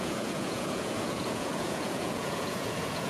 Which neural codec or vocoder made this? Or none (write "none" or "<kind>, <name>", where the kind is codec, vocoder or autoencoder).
vocoder, Vocos